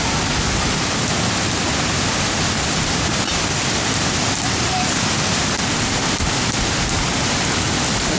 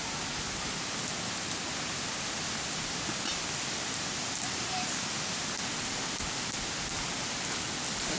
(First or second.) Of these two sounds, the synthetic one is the first